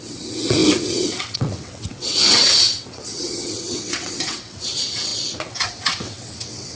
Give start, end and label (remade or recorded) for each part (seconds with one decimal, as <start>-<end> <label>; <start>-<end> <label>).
0.0-6.7 remade